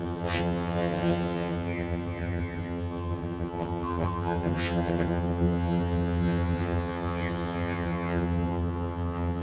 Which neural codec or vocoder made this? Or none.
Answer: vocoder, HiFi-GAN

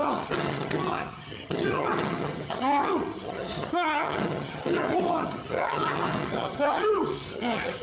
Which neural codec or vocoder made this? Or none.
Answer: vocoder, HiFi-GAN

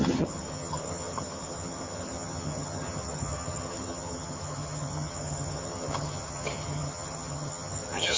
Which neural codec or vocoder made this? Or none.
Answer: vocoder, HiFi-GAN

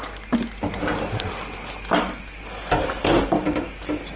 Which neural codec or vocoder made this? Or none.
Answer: none